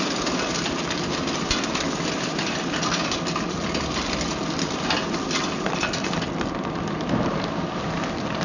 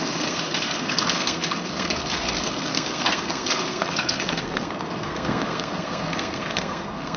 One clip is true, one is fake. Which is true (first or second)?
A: first